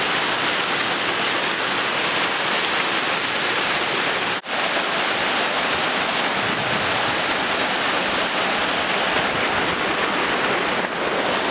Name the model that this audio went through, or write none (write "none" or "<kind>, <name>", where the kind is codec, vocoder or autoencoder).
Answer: none